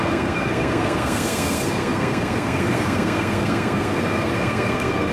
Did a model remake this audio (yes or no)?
yes